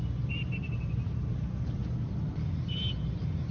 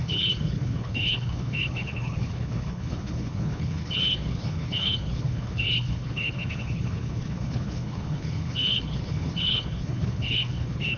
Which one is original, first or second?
first